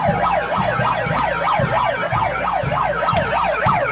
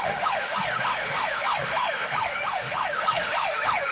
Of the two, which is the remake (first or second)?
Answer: second